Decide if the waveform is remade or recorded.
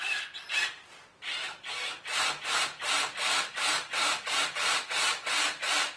remade